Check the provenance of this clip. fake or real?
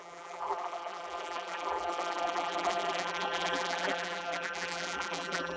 fake